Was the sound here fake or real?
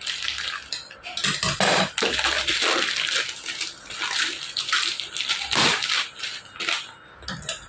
real